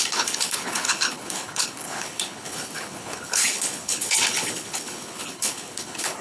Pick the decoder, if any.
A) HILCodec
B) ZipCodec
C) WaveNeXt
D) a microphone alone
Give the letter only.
A